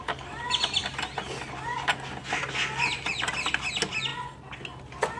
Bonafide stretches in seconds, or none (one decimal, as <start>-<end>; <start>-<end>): 0.0-5.2